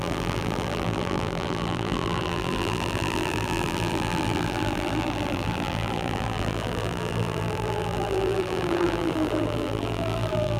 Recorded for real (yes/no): no